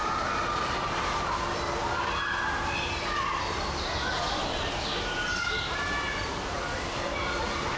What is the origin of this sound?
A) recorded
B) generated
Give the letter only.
A